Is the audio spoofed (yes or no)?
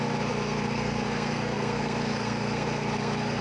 yes